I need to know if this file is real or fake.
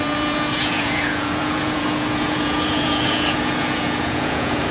fake